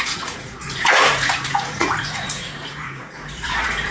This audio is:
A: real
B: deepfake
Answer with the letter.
B